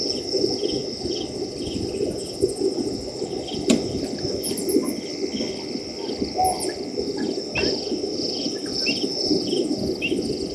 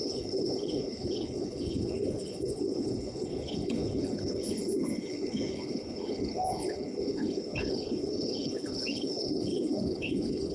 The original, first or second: first